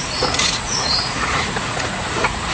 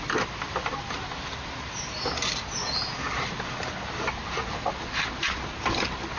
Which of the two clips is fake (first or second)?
first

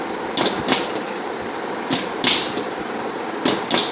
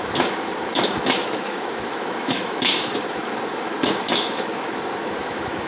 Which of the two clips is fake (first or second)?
second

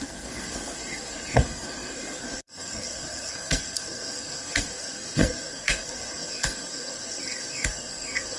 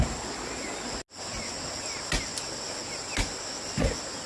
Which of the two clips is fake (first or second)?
first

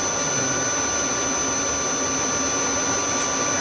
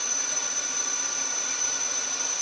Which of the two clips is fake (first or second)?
second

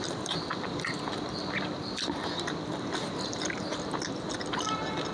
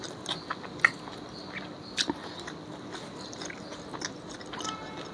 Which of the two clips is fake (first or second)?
first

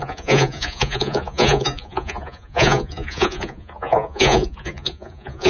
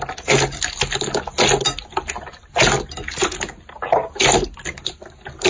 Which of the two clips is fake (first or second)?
first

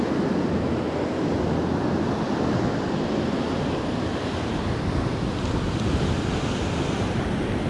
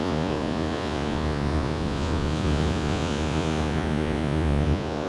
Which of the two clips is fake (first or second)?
second